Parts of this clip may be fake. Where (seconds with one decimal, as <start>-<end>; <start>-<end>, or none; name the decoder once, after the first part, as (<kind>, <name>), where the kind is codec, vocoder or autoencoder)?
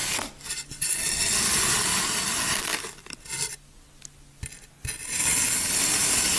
none